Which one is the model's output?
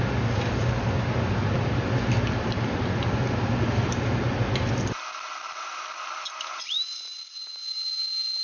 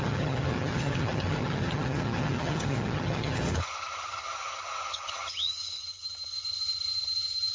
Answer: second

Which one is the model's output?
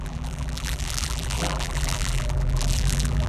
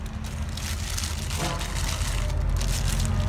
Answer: first